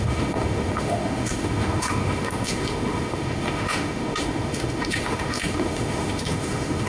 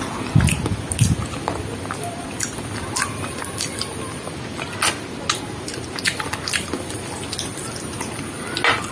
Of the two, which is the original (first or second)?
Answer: second